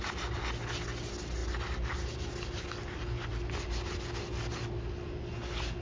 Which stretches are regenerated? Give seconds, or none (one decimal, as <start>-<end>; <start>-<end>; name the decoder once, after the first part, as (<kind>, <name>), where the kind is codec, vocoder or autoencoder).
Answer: none